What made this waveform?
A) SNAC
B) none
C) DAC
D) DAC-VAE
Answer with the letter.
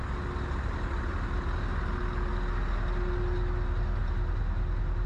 B